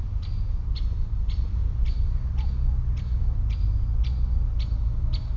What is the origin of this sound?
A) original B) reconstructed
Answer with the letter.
A